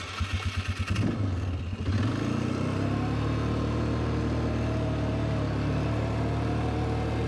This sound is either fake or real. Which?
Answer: real